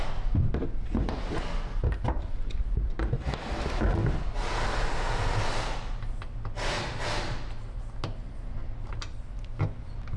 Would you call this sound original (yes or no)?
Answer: yes